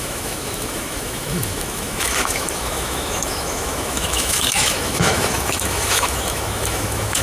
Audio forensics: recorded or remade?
remade